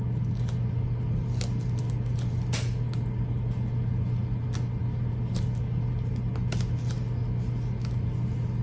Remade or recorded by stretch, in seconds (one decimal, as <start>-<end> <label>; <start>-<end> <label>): 0.0-8.6 recorded